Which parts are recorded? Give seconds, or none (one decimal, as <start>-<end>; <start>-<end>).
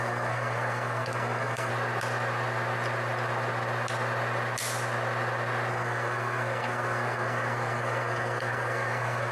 1.7-5.7